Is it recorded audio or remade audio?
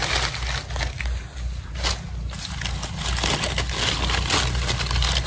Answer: recorded